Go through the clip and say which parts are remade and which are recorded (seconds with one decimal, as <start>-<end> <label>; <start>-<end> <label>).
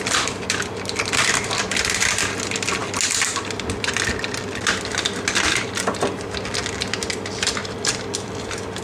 0.0-2.8 remade; 2.8-7.0 recorded; 7.0-8.8 remade